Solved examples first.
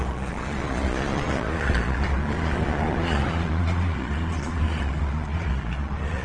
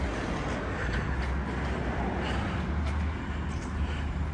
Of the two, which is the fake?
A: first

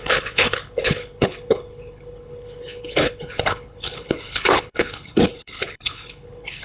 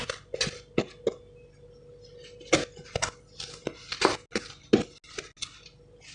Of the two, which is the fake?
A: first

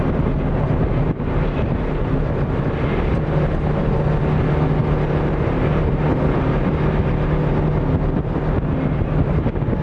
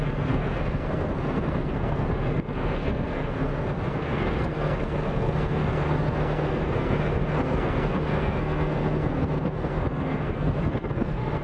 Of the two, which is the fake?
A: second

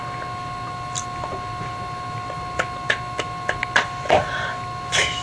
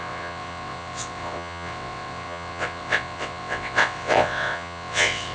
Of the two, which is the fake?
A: second